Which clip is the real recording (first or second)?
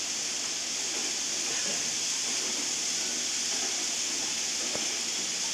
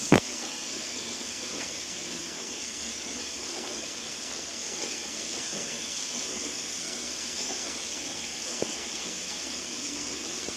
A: first